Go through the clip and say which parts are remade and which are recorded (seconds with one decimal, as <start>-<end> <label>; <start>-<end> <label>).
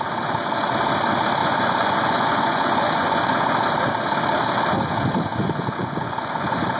0.0-1.4 recorded; 1.4-3.5 remade; 3.5-5.3 recorded; 5.3-6.8 remade